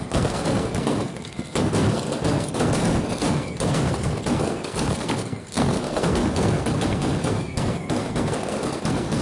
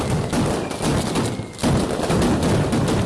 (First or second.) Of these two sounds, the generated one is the first